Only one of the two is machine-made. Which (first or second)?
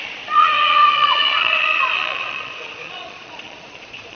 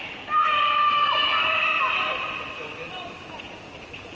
first